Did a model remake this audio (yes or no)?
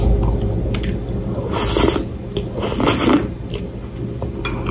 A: no